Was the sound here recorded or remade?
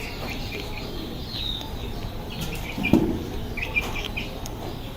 remade